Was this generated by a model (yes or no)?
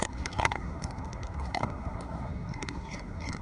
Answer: yes